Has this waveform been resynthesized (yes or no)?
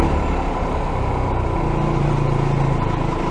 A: no